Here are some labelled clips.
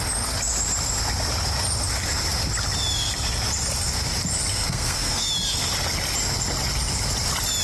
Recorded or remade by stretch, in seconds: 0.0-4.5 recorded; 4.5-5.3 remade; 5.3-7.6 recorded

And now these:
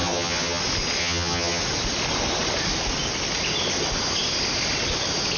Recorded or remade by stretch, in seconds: 0.0-0.6 remade; 0.6-1.0 recorded; 1.0-1.6 remade; 1.6-5.4 recorded

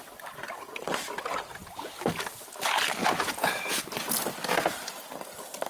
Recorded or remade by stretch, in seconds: 0.0-3.0 recorded; 3.0-3.8 remade; 3.8-5.7 recorded

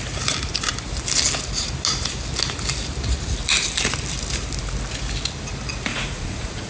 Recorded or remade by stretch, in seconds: 0.0-5.9 recorded; 5.9-6.7 remade

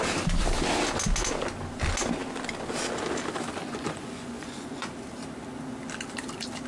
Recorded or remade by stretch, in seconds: 0.0-3.6 recorded; 3.6-4.9 remade; 4.9-6.7 recorded